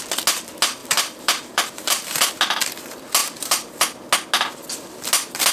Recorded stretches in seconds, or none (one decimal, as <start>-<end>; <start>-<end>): 0.0-0.8; 2.3-3.2; 3.8-5.5